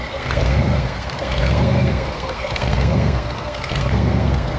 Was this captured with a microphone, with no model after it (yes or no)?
no